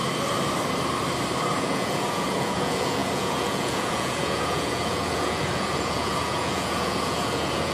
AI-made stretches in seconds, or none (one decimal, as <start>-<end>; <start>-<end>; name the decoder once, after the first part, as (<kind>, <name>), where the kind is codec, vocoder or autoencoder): 1.6-7.7 (vocoder, Vocos)